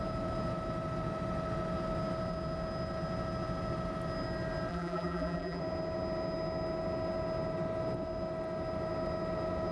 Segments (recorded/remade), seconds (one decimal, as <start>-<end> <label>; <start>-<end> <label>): 0.0-4.7 recorded; 4.7-5.6 remade; 5.6-9.7 recorded